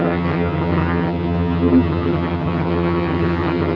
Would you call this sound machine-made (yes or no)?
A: yes